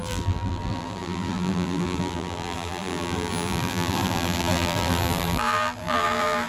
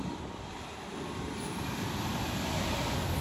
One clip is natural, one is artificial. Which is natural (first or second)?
second